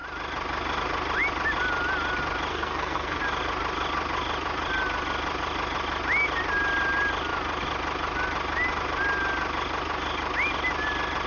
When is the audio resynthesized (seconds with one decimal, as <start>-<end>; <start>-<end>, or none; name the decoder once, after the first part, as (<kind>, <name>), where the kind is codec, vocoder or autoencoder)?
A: 2.5-3.2 (codec, SNAC)